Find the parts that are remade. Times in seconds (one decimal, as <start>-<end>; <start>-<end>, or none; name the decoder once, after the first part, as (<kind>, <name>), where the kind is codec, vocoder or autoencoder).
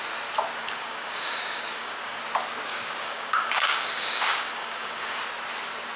0.6-2.2 (codec, DAC); 2.7-5.2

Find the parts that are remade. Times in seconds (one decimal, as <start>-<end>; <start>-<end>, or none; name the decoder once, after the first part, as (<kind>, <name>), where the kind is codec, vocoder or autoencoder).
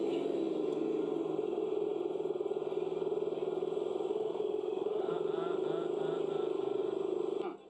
4.1-5.1 (autoencoder, DAC-VAE)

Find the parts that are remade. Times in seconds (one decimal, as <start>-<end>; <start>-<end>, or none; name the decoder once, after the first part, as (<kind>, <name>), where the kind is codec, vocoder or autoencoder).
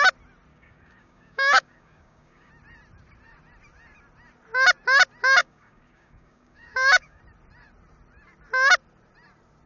0.5-2.5 (codec, DAC); 5.4-7.2